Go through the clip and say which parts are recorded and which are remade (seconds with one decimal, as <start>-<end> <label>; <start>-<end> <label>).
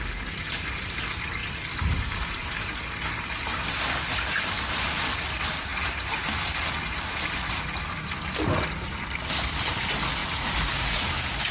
0.0-10.2 recorded; 10.2-11.1 remade; 11.1-11.5 recorded